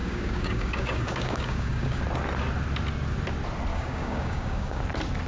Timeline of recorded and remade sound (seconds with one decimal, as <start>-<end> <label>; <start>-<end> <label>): 0.0-2.0 remade; 2.0-3.7 recorded; 3.7-4.8 remade; 4.8-5.3 recorded